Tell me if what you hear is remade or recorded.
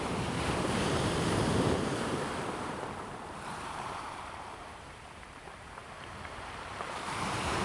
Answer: remade